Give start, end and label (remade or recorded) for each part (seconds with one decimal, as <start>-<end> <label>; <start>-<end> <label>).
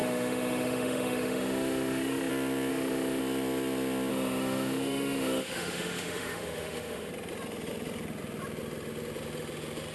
0.0-2.3 remade; 2.3-2.7 recorded; 2.7-3.2 remade; 3.2-4.1 recorded; 4.1-7.1 remade; 7.1-9.9 recorded